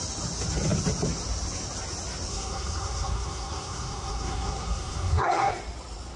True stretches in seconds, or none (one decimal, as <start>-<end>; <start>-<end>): 0.0-2.3; 5.5-6.2